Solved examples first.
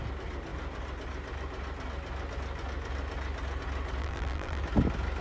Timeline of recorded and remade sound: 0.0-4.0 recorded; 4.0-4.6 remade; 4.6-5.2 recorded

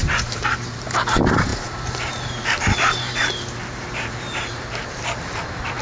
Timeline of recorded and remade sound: 0.0-0.9 remade; 0.9-1.5 recorded; 1.5-5.0 remade; 5.0-5.8 recorded

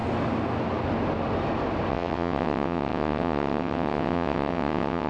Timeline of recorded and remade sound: 0.0-1.9 recorded; 1.9-5.1 remade

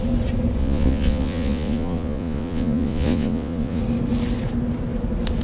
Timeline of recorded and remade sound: 0.0-0.6 recorded; 0.6-3.8 remade; 3.8-5.4 recorded